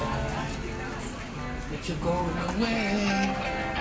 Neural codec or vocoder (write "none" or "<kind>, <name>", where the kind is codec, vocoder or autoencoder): none